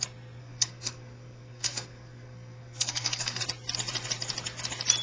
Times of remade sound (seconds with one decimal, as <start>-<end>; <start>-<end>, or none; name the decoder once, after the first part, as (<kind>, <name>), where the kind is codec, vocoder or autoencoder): 0.4-3.4 (codec, SNAC)